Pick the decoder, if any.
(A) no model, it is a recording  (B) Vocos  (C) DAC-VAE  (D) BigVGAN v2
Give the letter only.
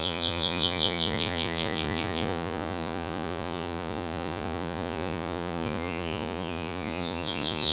B